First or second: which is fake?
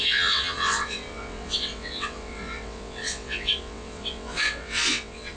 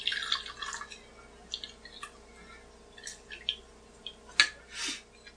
first